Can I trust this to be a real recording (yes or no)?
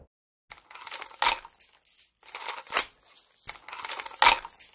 yes